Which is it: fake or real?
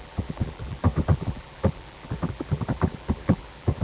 fake